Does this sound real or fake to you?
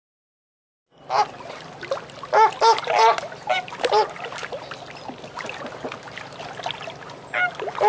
real